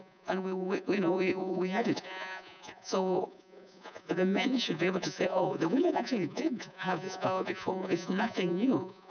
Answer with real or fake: fake